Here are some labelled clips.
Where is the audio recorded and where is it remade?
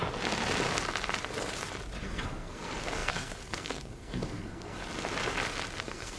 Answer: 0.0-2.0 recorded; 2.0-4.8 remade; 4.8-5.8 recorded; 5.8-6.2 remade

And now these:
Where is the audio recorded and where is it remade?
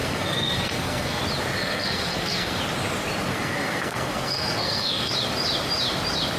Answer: 0.0-1.2 remade; 1.2-1.6 recorded; 1.6-2.6 remade; 2.6-3.3 recorded; 3.3-5.1 remade; 5.1-6.4 recorded